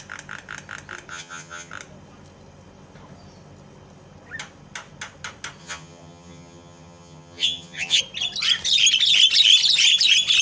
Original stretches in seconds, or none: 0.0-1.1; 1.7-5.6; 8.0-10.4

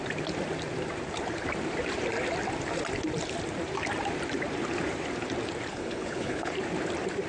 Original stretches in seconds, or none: 0.0-5.7; 6.5-7.3

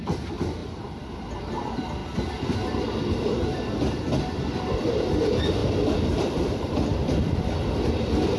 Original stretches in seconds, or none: 0.6-1.4; 2.0-4.9; 5.6-6.2

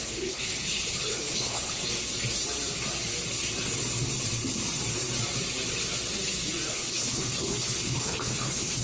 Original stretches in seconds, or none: 1.8-6.7

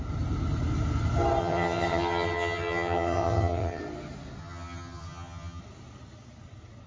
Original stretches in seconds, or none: 0.0-1.4; 3.8-4.4; 5.6-6.9

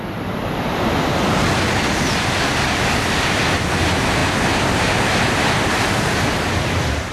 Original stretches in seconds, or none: 0.0-7.1